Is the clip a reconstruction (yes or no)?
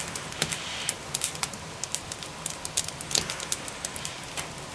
no